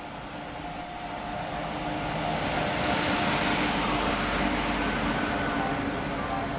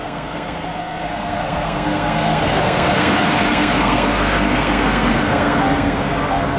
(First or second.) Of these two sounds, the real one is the first